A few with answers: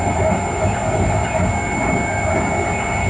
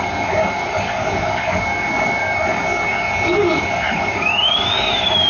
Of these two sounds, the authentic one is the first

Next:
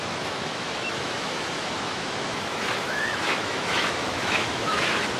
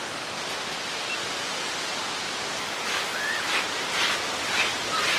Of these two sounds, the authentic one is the second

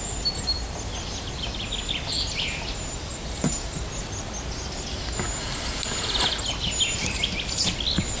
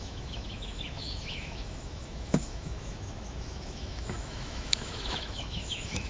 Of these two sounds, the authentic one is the first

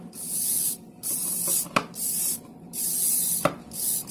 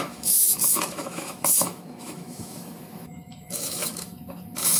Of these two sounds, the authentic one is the first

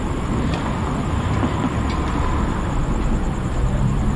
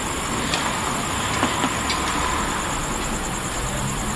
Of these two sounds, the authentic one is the second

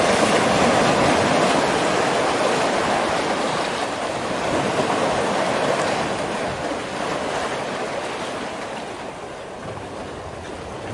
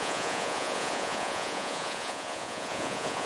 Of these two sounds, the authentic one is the first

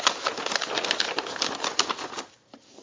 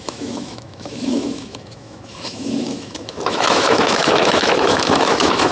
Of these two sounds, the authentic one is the first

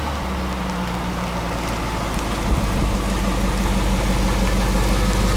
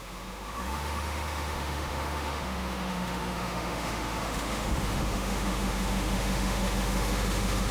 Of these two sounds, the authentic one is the first